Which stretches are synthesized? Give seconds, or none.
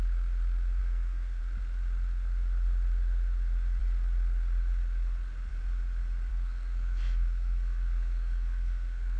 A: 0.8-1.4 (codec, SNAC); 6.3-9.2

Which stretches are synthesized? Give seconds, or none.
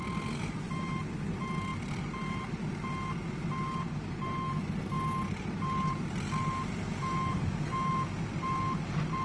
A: none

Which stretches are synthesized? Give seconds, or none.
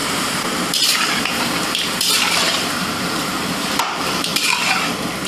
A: 0.0-4.3 (vocoder, BigVGAN v2)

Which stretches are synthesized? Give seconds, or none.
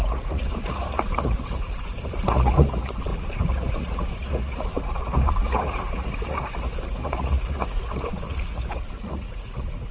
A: 0.0-9.9 (vocoder, Vocos)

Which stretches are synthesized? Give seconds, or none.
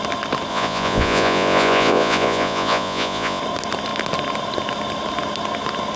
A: 0.5-3.4 (vocoder, Vocos)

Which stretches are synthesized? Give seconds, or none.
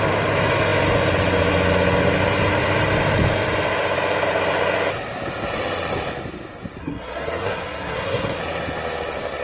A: 6.8-8.4 (codec, SNAC)